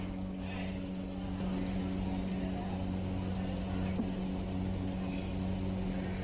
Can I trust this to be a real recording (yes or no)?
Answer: yes